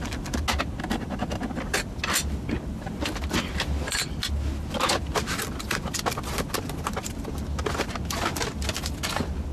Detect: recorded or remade recorded